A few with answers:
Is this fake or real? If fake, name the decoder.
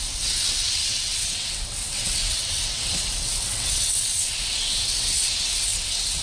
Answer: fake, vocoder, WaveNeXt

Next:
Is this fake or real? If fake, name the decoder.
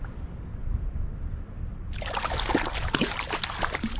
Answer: real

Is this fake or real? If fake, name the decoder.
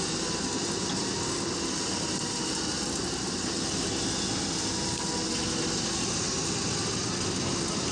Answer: real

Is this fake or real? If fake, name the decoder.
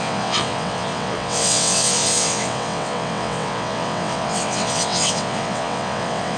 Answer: fake, vocoder, WaveNeXt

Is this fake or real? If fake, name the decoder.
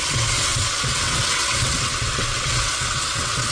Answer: fake, vocoder, WaveNeXt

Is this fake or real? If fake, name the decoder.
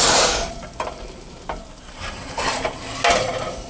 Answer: real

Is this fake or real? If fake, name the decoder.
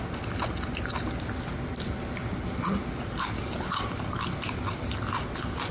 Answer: real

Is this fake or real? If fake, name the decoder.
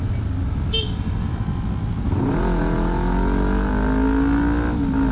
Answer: real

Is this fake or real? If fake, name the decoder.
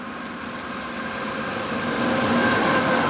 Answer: real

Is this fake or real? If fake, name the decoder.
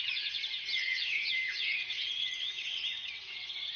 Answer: fake, vocoder, WaveNeXt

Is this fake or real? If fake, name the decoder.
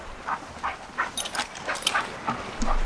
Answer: real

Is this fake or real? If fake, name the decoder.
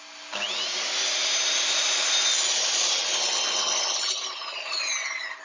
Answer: real